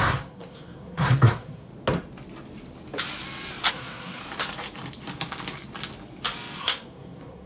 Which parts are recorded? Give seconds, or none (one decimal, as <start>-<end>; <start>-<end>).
1.7-3.7; 4.2-6.6